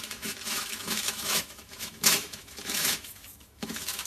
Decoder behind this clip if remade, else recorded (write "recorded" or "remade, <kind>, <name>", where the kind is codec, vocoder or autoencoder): remade, autoencoder, DAC-VAE